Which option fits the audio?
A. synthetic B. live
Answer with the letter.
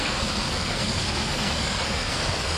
A